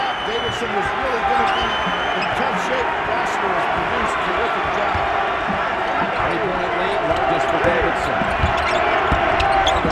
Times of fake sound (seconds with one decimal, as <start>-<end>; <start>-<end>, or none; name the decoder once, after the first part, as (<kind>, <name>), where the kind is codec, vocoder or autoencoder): none